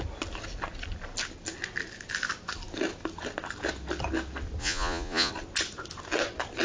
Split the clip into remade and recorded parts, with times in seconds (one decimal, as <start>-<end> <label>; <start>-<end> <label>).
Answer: 0.0-4.6 recorded; 4.6-5.3 remade; 5.3-6.6 recorded